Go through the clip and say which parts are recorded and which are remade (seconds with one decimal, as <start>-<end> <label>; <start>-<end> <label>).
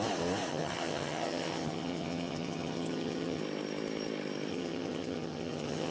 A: 0.0-0.5 recorded; 0.5-3.4 remade; 3.4-4.5 recorded; 4.5-5.9 remade